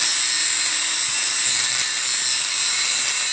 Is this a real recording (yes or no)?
yes